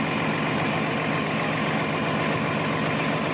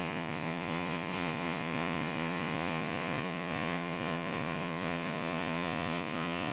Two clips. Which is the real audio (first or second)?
first